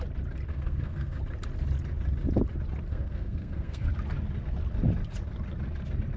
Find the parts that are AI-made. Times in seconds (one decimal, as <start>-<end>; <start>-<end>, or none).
0.5-1.2; 2.9-3.9